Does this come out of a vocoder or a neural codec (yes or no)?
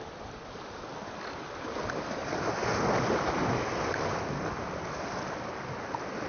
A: no